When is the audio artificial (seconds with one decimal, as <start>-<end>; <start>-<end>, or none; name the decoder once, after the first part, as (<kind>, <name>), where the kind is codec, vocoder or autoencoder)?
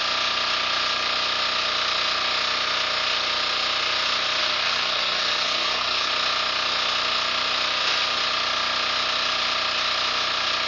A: 4.4-6.1 (codec, SNAC)